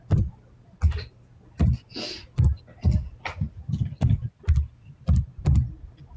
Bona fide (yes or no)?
yes